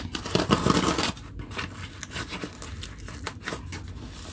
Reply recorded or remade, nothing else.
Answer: recorded